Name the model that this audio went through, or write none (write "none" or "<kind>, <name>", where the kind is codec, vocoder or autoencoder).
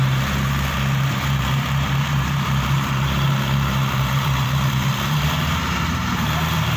vocoder, BigVGAN v2